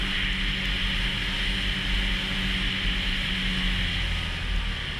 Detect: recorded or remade recorded